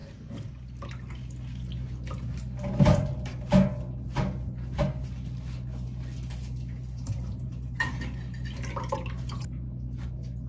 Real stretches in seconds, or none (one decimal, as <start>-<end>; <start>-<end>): 0.0-10.5